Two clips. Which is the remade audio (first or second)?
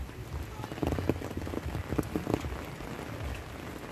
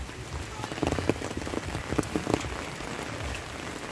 second